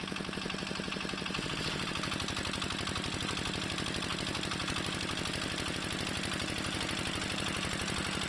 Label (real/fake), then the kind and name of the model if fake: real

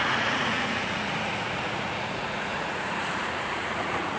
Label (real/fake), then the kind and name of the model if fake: fake, vocoder, Vocos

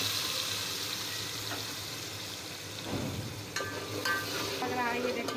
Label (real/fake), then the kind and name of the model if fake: real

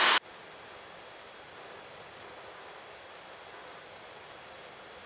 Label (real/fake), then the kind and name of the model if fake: real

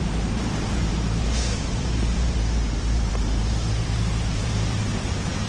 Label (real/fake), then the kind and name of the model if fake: fake, vocoder, BigVGAN v2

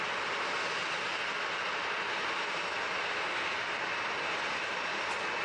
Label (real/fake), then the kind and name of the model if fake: real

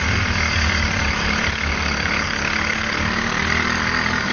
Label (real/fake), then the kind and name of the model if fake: fake, codec, DAC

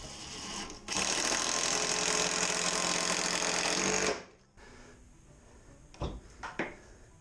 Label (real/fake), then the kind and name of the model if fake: real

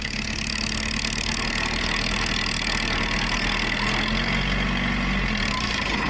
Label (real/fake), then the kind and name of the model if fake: real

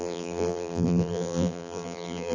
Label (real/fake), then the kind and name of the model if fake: fake, vocoder, BigVGAN v2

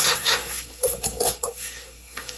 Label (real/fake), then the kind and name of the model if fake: fake, codec, SNAC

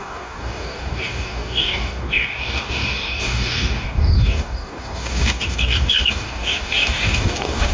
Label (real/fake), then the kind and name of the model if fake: fake, codec, DAC